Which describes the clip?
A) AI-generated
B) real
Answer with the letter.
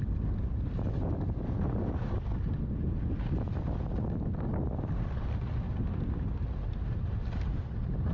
B